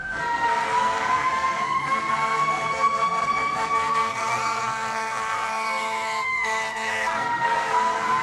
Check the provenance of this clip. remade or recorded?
remade